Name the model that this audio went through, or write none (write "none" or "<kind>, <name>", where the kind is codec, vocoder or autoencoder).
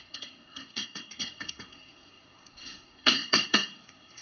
codec, SNAC